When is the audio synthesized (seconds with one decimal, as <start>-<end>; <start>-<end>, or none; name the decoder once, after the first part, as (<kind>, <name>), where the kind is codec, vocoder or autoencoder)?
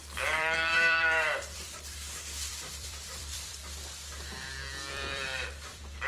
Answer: 0.0-3.6 (vocoder, BigVGAN v2); 4.9-6.1